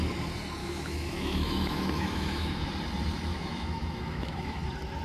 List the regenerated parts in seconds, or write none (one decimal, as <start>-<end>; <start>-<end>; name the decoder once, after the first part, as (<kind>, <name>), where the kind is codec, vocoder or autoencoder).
0.6-2.7 (autoencoder, DAC-VAE); 3.3-4.6

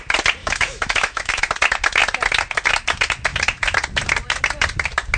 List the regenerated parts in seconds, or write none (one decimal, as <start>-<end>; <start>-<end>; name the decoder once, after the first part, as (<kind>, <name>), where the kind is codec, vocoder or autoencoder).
0.4-1.4 (autoencoder, DAC-VAE)